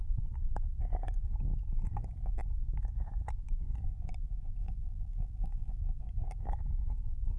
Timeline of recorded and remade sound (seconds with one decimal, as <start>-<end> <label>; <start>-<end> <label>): 0.0-4.6 recorded; 4.6-5.9 remade; 5.9-7.4 recorded